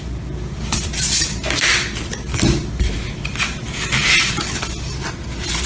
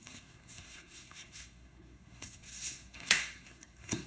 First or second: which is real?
first